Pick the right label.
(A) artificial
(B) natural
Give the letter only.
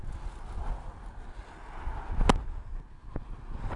B